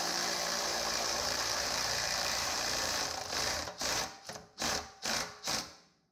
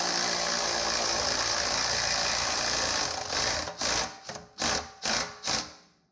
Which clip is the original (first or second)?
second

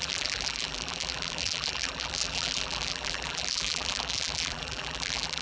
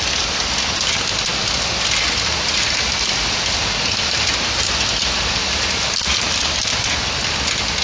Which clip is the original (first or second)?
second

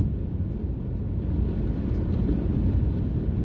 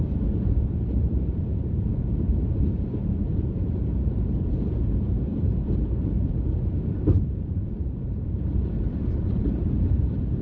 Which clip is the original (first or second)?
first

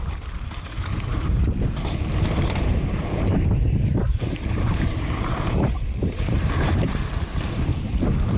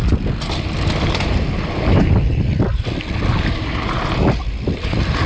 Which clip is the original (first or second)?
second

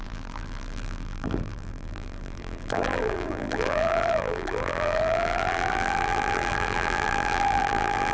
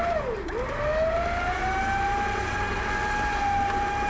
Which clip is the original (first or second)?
second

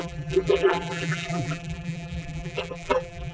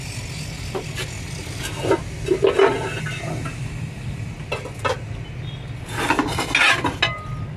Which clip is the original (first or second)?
second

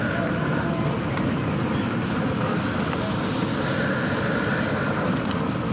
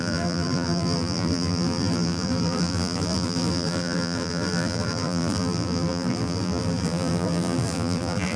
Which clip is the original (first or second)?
first